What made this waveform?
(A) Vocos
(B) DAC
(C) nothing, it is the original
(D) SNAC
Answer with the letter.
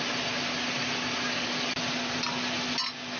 C